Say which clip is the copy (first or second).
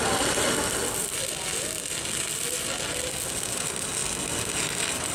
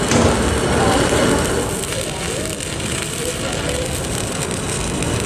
second